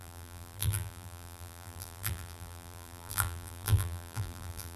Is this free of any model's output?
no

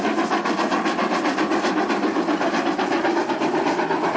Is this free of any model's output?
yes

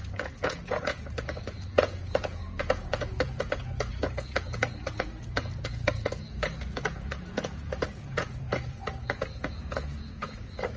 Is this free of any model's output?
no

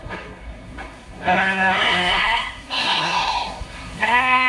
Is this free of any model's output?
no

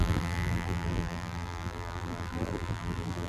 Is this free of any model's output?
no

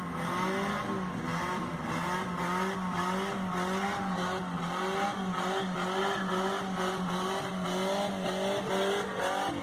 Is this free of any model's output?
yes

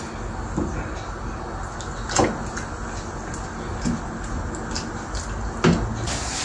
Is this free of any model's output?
yes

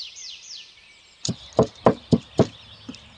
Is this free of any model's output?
yes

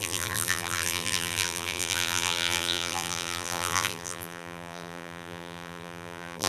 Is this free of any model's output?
no